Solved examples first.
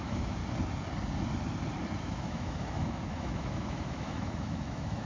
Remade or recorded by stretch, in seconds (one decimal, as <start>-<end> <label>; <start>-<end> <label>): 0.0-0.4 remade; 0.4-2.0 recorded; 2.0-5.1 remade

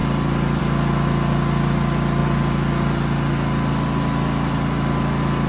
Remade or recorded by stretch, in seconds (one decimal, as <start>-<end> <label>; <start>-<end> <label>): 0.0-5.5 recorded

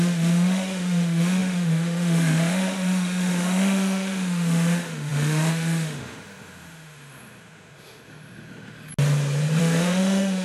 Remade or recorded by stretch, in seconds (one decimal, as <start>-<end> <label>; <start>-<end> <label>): 0.0-8.9 remade; 8.9-9.6 recorded; 9.6-10.4 remade

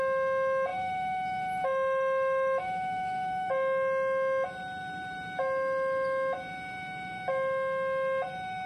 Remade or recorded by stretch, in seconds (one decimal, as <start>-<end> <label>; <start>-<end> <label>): 0.0-0.7 recorded; 0.7-3.5 remade; 3.5-8.7 recorded

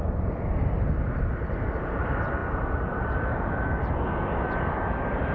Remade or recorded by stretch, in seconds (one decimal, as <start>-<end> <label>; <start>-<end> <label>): 0.0-5.3 recorded